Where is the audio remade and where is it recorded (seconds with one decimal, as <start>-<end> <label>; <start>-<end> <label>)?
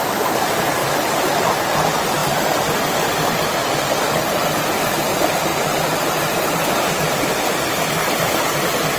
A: 0.0-0.8 recorded; 0.8-1.5 remade; 1.5-9.0 recorded